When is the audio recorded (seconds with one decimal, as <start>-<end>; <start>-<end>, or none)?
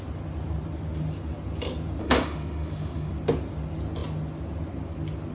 0.0-2.0; 3.1-5.3